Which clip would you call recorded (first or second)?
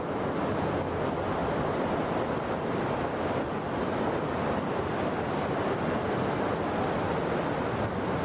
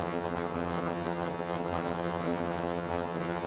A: first